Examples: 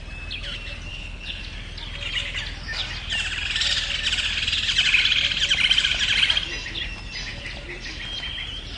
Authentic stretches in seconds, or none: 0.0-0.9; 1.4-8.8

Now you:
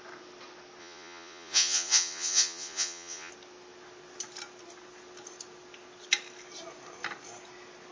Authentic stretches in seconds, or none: 0.0-0.8; 3.3-7.9

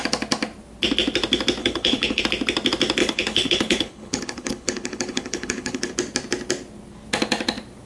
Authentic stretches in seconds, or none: 0.0-1.6; 2.2-3.0; 5.9-7.9

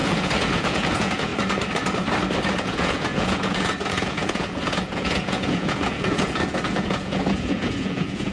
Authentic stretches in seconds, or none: 1.3-2.6

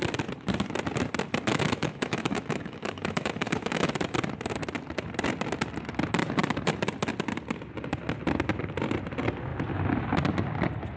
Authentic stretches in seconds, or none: 0.0-1.5; 3.9-11.0

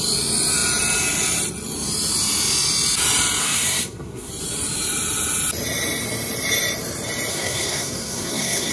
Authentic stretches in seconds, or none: 0.0-3.4; 4.3-7.3